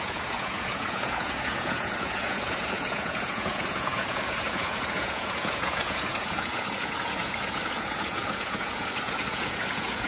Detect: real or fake fake